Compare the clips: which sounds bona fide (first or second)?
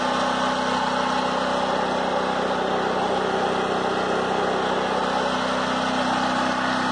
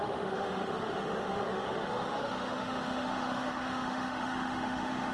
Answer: first